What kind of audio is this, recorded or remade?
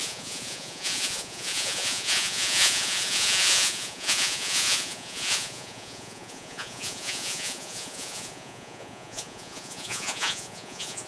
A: remade